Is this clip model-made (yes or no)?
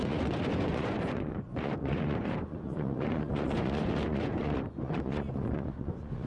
yes